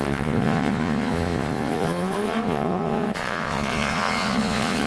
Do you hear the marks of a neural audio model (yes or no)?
yes